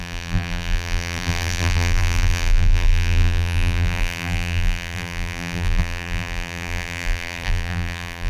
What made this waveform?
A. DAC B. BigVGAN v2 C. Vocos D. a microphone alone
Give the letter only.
B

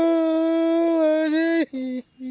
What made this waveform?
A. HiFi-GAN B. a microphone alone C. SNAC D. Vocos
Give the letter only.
B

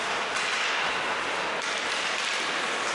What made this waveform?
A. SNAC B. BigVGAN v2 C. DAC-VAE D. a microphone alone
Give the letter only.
B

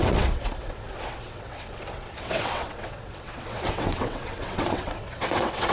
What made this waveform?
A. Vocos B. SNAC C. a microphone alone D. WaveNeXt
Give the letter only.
D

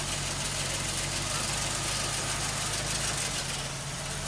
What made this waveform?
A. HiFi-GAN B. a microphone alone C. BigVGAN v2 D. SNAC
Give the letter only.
B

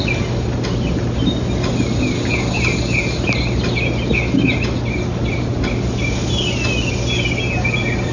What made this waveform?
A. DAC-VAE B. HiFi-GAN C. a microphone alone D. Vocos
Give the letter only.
C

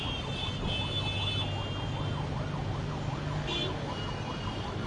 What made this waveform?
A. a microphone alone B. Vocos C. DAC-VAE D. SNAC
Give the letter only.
A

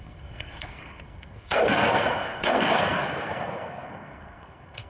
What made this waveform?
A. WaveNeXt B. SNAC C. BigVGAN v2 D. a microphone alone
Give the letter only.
B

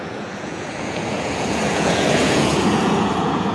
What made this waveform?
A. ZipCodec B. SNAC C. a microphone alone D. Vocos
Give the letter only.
D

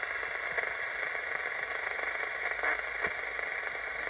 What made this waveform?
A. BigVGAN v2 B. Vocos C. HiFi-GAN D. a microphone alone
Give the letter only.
D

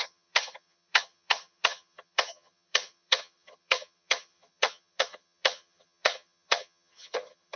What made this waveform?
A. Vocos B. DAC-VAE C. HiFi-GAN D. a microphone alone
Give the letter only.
C